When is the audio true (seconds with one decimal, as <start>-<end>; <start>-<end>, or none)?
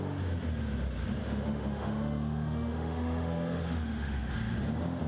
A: 0.0-1.2; 4.3-5.1